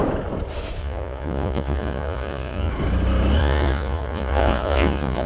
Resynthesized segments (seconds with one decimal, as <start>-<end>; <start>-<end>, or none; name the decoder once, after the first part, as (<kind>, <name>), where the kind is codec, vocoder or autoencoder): 0.8-2.7 (vocoder, Vocos); 3.4-5.3